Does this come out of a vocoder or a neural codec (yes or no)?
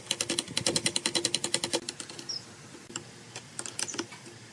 no